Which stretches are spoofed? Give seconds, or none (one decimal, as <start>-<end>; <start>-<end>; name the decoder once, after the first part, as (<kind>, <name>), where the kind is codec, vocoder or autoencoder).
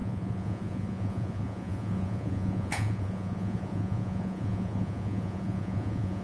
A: 0.0-6.2 (vocoder, Vocos)